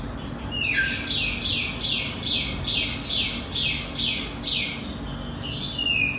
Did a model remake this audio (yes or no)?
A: no